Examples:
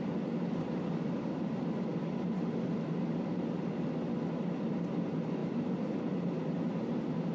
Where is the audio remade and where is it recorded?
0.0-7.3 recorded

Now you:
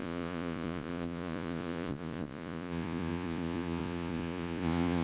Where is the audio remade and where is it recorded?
0.0-5.0 remade